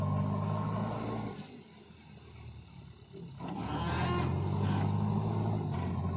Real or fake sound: real